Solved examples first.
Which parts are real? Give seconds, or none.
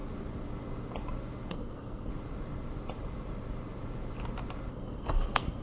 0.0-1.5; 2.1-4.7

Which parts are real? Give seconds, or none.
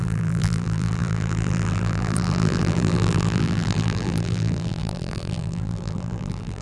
none